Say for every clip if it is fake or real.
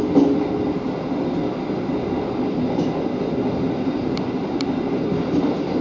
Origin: real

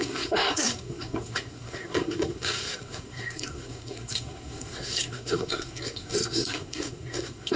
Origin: fake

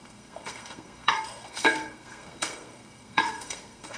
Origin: fake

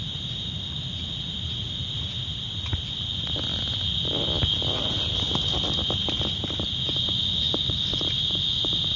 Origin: real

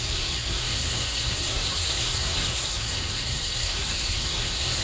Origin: fake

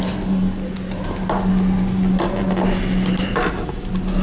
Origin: real